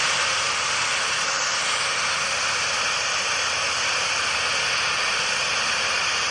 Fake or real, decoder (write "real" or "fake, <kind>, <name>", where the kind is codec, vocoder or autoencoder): real